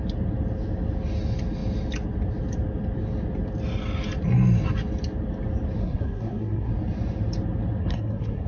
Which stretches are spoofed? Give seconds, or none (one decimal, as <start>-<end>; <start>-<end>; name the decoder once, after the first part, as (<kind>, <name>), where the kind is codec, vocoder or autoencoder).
5.8-6.7 (codec, SNAC); 7.8-8.5